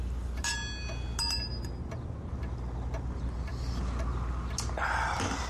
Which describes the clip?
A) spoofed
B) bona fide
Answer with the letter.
B